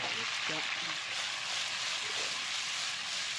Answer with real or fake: real